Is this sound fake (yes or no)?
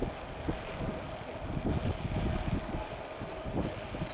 no